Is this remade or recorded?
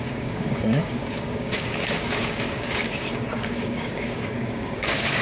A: remade